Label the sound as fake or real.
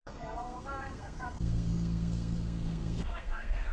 fake